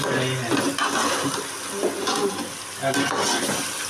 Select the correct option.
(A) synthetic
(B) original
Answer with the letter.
B